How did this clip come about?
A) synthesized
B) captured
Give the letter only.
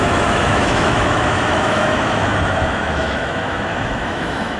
A